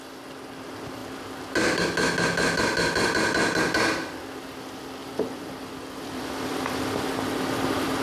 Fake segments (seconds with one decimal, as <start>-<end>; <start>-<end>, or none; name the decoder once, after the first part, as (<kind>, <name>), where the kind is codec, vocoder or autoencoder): 5.0-7.1 (vocoder, BigVGAN v2)